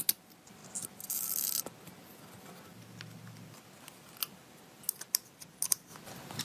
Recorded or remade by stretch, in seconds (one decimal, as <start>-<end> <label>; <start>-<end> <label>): 0.0-6.4 recorded